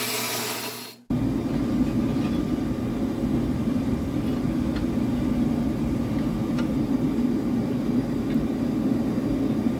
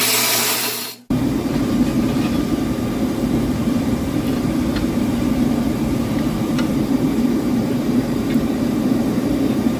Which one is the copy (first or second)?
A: second